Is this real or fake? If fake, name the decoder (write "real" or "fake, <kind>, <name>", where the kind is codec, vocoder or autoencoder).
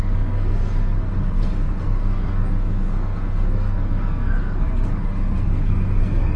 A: fake, codec, SNAC